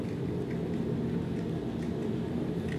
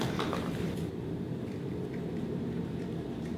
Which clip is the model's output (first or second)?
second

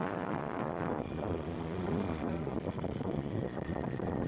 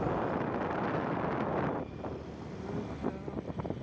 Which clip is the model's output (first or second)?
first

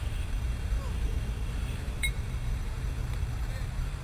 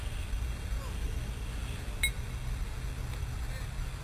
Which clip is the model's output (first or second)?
first